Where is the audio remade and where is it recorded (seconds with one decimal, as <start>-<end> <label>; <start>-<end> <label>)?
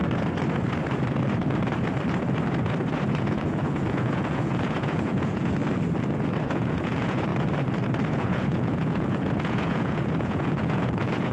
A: 0.0-3.2 recorded; 3.2-5.6 remade; 5.6-6.4 recorded; 6.4-7.3 remade; 7.3-8.1 recorded; 8.1-11.3 remade